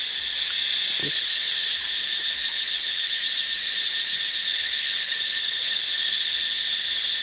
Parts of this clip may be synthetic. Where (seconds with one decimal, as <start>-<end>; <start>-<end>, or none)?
1.0-1.7; 2.5-3.2; 4.5-6.4